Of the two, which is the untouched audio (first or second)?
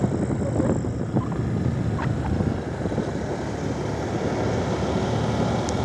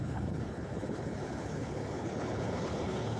first